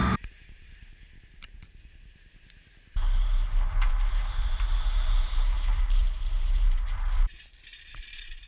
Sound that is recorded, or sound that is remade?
remade